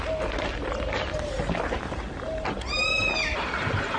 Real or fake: real